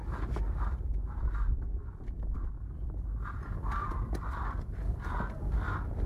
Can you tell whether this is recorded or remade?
remade